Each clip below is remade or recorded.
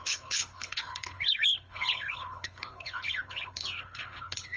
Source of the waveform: remade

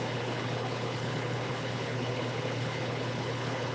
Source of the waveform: remade